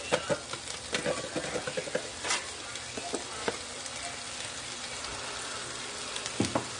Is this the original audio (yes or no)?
yes